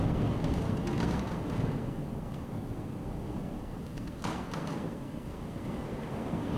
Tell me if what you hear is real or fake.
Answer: fake